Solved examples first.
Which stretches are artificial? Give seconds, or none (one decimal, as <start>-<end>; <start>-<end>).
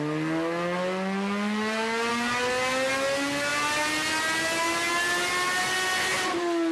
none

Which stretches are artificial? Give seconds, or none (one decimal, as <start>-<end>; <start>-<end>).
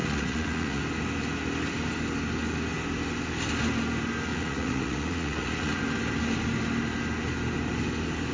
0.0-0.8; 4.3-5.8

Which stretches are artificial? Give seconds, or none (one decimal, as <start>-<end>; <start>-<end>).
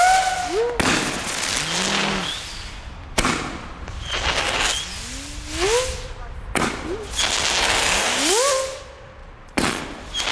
9.2-9.8